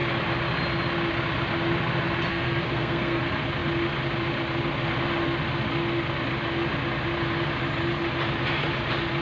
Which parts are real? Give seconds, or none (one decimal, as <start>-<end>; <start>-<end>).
0.0-2.3; 3.2-9.2